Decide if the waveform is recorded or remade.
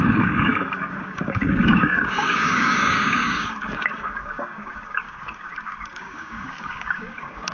remade